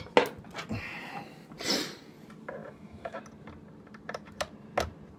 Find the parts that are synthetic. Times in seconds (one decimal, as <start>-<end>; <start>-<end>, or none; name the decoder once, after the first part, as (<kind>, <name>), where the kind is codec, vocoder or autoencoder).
2.6-3.2 (autoencoder, DAC-VAE)